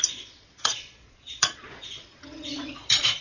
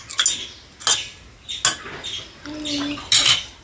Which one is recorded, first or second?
second